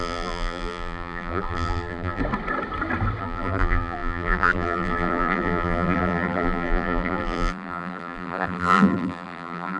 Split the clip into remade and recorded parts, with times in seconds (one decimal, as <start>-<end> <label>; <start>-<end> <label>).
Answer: 0.0-2.2 remade; 2.2-3.2 recorded; 3.2-9.8 remade